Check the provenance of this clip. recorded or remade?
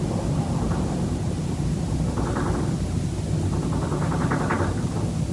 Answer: recorded